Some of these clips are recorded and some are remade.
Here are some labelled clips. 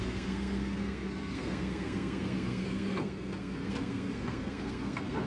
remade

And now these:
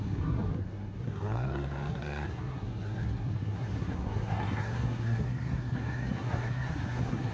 remade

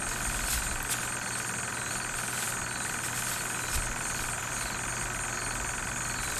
recorded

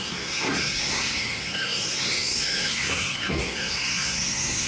remade